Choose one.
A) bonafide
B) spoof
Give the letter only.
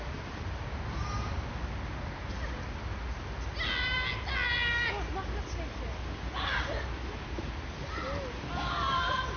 A